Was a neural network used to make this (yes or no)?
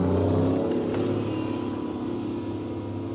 no